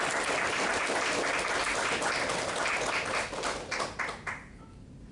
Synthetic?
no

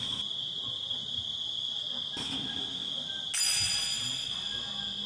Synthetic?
no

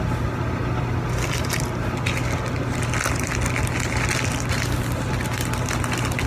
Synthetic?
no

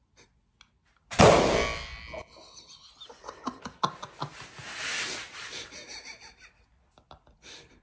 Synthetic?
no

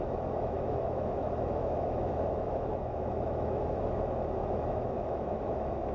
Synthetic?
yes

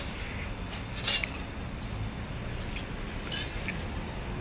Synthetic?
no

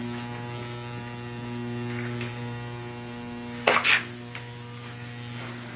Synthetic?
no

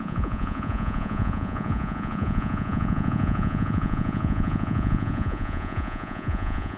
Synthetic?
yes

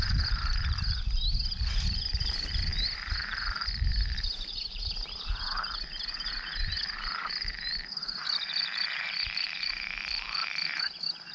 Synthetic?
yes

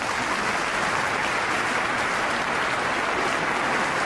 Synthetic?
no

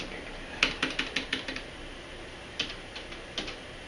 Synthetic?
no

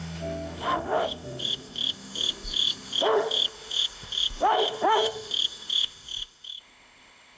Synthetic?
yes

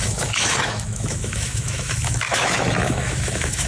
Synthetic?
yes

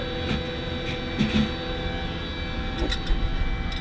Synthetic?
no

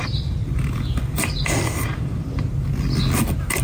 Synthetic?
no